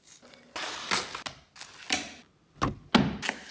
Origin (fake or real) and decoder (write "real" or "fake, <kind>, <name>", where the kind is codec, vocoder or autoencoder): real